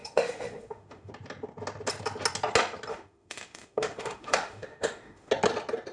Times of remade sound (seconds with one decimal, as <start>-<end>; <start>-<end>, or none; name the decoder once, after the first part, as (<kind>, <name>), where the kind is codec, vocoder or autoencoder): 0.0-1.1 (autoencoder, DAC-VAE); 2.9-5.3